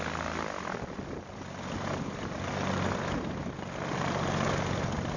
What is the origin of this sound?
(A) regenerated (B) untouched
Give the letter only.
B